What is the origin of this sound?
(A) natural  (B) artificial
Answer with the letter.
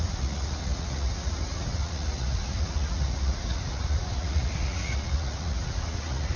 B